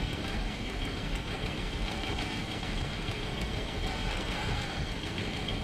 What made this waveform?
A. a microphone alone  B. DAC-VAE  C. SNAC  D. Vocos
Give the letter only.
C